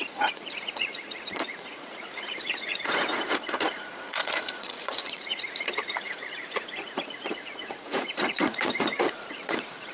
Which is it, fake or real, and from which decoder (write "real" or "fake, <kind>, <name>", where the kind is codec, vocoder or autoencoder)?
fake, vocoder, Vocos